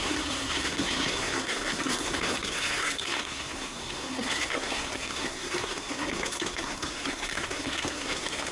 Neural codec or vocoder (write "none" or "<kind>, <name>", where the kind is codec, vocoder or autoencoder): codec, SNAC